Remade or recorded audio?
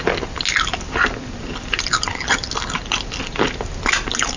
recorded